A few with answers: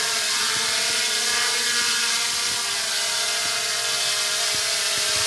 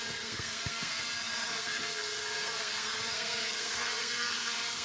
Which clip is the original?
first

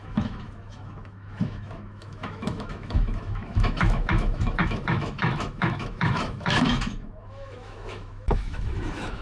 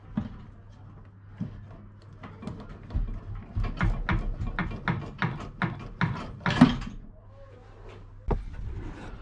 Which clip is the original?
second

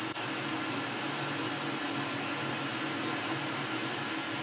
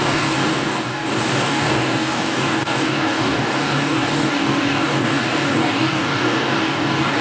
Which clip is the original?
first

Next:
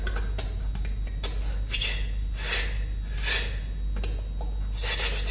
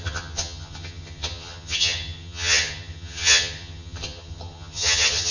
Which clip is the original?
first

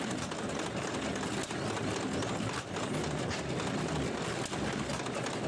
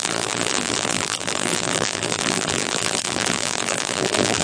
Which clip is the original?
first